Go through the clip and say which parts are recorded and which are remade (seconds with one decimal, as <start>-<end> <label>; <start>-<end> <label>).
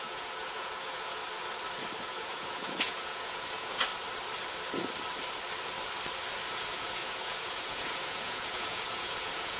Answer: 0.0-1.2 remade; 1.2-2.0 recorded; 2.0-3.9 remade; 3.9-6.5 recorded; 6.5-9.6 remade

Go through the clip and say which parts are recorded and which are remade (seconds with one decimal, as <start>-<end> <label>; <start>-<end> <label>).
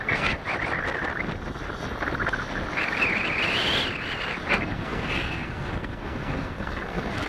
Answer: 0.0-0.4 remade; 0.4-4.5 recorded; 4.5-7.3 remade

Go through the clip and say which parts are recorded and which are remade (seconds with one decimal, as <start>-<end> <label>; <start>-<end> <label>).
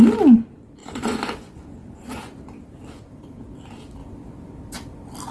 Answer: 0.0-0.8 recorded; 0.8-2.4 remade; 2.4-5.3 recorded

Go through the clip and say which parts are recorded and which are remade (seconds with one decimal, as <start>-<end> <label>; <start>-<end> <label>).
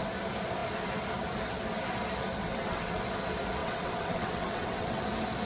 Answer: 0.0-2.4 recorded; 2.4-3.0 remade; 3.0-3.6 recorded; 3.6-5.0 remade; 5.0-5.5 recorded